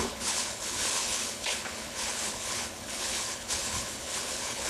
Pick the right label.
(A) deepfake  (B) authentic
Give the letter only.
A